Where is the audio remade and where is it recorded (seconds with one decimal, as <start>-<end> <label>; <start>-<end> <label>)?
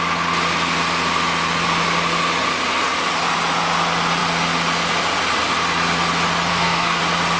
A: 0.0-6.5 recorded; 6.5-7.0 remade; 7.0-7.4 recorded